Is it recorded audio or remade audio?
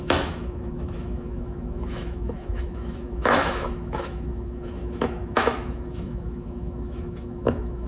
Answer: remade